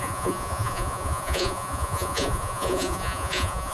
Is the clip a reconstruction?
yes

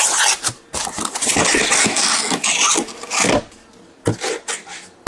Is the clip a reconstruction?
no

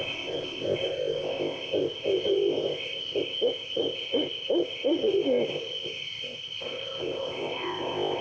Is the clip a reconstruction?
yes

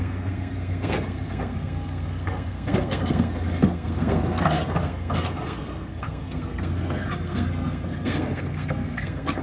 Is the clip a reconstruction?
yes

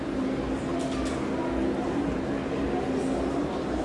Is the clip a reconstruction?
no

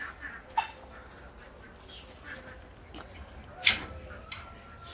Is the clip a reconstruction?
no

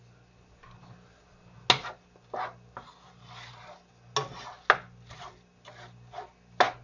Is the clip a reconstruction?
no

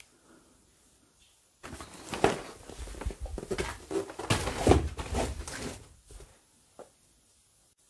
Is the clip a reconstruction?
no